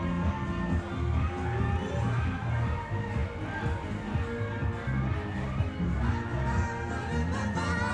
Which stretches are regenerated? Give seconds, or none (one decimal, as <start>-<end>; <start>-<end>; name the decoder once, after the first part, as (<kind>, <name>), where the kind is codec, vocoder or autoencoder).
none